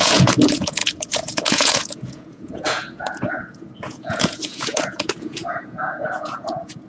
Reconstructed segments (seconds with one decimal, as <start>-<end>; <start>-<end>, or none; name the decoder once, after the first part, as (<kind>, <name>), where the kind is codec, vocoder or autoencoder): 0.0-6.9 (vocoder, Vocos)